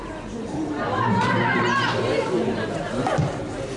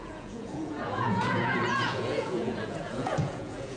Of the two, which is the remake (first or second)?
second